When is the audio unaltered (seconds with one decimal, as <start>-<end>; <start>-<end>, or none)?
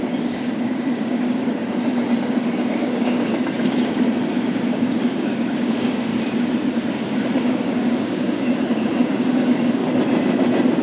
1.9-2.7; 3.3-4.3; 6.1-6.7; 9.8-10.8